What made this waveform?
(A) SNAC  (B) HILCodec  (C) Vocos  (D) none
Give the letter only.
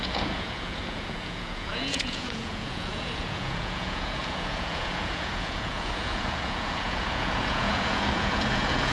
C